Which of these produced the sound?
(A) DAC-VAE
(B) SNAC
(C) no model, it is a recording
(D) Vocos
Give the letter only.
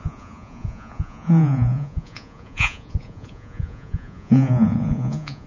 D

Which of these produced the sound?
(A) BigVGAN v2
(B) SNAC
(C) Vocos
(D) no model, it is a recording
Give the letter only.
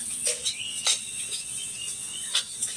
C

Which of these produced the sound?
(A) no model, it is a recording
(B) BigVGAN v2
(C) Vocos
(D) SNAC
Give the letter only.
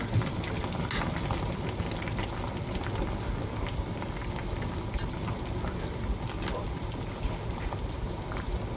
A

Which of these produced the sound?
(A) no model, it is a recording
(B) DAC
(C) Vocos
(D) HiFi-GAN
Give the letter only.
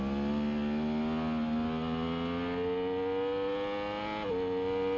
A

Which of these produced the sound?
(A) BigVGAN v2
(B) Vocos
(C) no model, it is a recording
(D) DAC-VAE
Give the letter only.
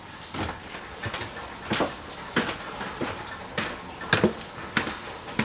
C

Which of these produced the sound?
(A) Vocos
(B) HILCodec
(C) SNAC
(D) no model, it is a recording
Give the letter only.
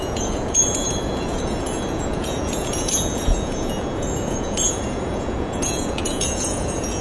A